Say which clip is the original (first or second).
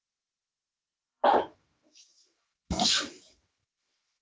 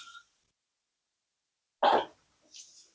second